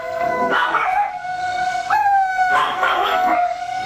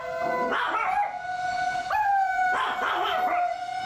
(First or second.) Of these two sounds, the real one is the second